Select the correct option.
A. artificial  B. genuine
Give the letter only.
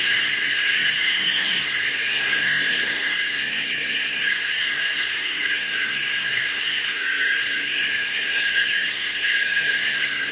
A